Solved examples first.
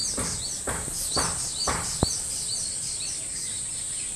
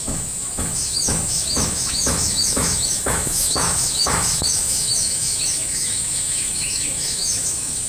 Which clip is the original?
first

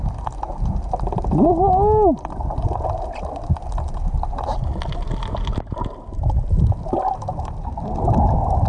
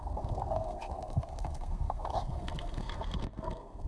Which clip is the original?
first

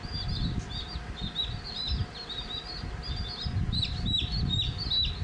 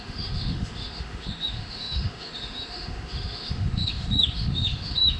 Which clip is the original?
first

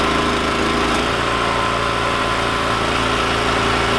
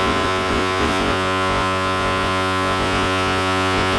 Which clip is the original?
first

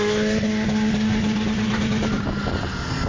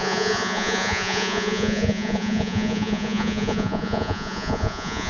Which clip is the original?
first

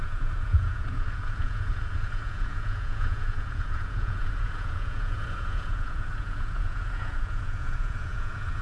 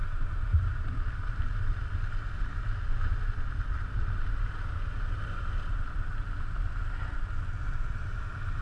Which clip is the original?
second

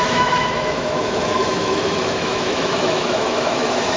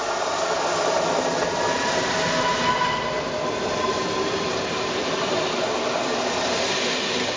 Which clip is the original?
second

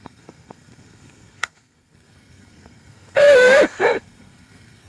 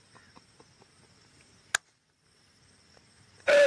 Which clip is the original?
second